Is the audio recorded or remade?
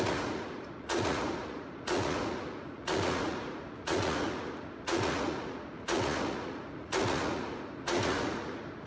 remade